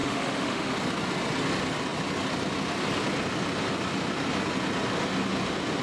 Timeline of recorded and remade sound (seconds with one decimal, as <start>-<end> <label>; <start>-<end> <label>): 0.0-0.7 remade; 0.7-5.8 recorded